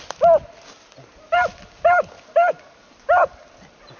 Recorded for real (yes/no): yes